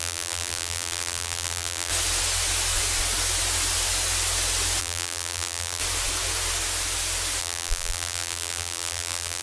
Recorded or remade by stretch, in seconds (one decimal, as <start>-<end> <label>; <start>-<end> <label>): 0.0-1.9 remade; 1.9-4.8 recorded; 4.8-5.8 remade; 5.8-7.4 recorded; 7.4-9.4 remade